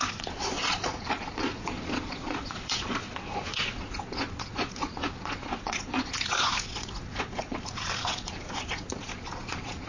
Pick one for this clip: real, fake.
fake